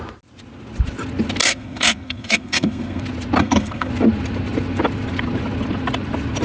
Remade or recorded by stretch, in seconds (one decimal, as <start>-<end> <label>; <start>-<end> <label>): 0.0-1.4 recorded; 1.4-3.0 remade; 3.0-3.4 recorded; 3.4-3.9 remade; 3.9-6.4 recorded